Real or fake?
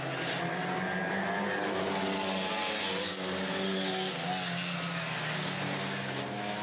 real